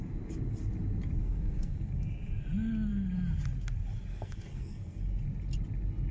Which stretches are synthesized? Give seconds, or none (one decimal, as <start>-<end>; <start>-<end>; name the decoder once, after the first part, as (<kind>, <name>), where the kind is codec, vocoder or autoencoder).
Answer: 1.2-1.9 (codec, SNAC); 4.1-5.0